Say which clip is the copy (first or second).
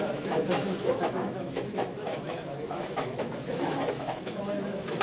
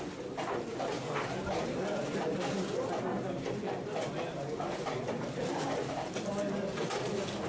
first